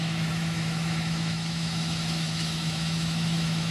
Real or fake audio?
fake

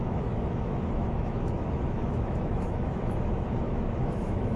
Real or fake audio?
fake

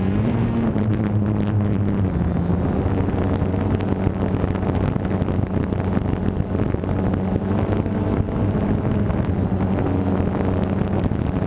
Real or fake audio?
real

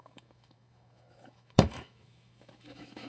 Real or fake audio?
fake